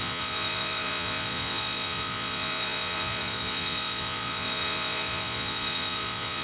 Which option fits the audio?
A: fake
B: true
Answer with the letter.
A